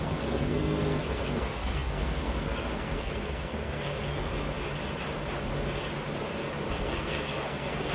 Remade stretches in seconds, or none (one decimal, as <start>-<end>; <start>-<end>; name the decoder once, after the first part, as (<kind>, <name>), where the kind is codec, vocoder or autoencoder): 0.0-4.3 (codec, SNAC); 6.7-7.9